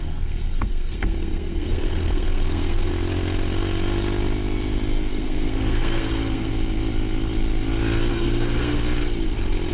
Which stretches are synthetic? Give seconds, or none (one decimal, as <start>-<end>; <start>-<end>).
0.0-2.9; 5.1-6.5; 8.1-8.8